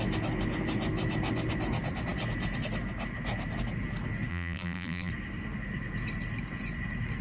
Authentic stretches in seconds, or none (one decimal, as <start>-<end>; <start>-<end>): 0.0-4.3; 5.1-7.2